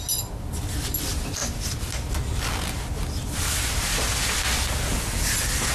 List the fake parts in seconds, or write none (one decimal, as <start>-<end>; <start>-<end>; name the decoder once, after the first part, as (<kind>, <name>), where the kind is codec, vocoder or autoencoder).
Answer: none